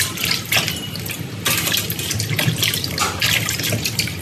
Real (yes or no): yes